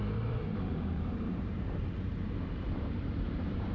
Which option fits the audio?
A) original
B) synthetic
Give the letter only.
B